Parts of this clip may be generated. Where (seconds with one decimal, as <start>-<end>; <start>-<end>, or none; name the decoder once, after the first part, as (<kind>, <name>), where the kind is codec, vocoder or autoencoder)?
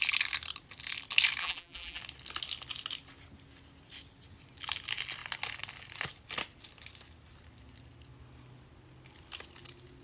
1.4-2.0 (vocoder, BigVGAN v2)